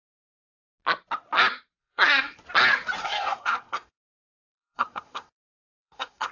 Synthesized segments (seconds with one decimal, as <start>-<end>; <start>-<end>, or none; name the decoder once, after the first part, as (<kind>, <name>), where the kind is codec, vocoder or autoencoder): 1.8-2.4 (codec, SNAC); 3.0-6.3